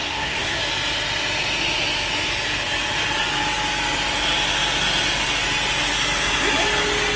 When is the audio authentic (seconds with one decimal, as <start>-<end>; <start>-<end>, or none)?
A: 0.6-7.2